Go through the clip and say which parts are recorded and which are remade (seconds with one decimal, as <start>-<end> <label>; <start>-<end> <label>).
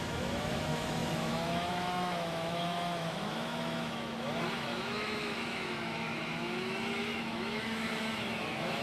0.0-8.8 remade